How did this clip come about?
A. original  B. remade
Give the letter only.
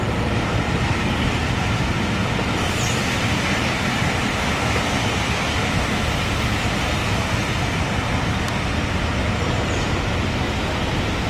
A